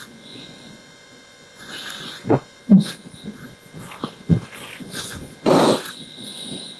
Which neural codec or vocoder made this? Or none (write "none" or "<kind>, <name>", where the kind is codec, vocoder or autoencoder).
vocoder, Vocos